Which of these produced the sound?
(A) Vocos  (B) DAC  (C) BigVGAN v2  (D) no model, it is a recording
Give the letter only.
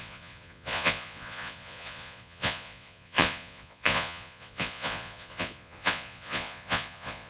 A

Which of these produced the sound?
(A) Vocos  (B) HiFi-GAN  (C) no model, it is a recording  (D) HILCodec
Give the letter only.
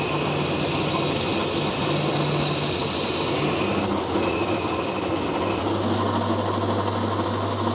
C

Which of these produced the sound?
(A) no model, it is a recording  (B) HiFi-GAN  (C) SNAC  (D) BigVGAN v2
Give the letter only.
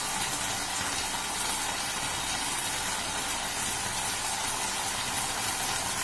A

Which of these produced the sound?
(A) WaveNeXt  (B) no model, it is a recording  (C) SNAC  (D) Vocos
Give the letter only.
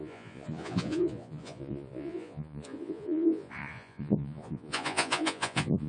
D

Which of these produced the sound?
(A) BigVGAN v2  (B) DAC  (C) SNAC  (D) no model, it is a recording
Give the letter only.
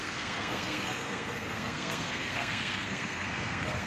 C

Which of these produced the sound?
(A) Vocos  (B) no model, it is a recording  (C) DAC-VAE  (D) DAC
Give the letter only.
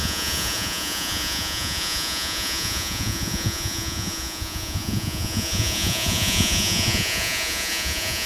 A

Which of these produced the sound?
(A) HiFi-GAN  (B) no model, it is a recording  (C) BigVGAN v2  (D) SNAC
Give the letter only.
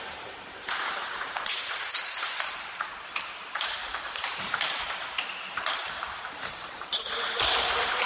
C